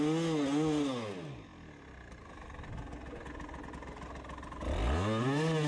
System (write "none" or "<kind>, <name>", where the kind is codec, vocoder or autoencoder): none